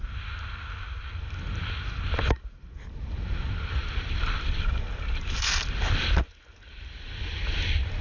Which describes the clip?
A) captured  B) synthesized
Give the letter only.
A